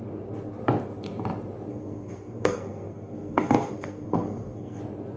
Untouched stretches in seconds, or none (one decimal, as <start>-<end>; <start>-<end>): 0.0-1.7; 4.8-5.2